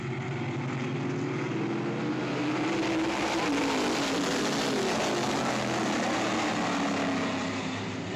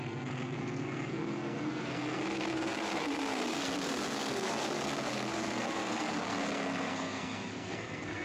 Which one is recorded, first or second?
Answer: first